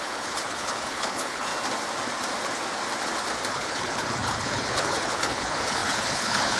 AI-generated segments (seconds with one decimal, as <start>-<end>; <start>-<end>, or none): 0.0-1.5; 3.5-6.6